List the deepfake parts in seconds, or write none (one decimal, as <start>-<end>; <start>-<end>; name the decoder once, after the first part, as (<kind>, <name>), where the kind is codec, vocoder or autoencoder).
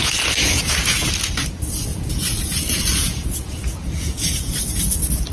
0.0-1.1 (vocoder, Vocos); 1.9-4.6